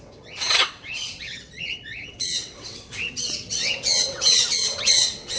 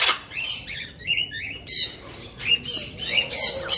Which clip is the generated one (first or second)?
first